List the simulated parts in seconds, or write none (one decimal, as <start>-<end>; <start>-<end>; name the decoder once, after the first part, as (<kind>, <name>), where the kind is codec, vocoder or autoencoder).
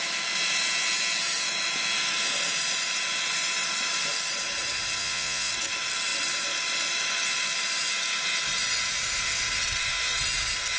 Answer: 5.0-5.5 (vocoder, Vocos)